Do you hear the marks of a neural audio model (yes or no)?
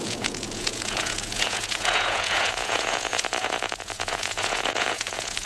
yes